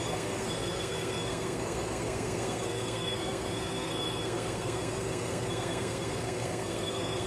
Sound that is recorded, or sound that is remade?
remade